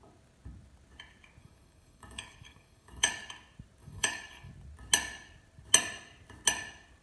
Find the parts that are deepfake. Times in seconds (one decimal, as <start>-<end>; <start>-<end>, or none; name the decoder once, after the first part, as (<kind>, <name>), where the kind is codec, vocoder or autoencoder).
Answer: 1.4-3.1 (codec, DAC); 3.8-4.5